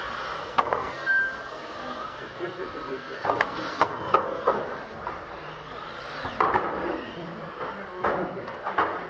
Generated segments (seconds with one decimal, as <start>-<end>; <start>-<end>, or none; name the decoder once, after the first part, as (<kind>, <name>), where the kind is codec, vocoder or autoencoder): 0.4-4.6 (codec, SNAC)